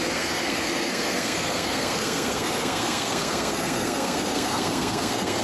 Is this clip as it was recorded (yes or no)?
no